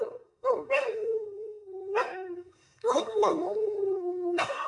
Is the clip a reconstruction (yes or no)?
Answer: yes